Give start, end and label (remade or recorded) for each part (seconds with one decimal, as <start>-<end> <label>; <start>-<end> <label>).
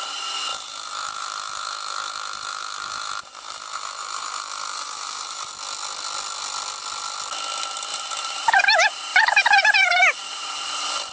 0.0-0.5 recorded; 0.5-5.5 remade; 5.5-7.9 recorded; 7.9-8.6 remade; 8.6-9.1 recorded; 9.1-10.0 remade; 10.0-11.1 recorded